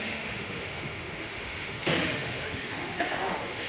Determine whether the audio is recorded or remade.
remade